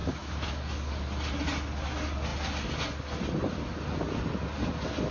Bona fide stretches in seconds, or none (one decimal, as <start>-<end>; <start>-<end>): 0.9-5.1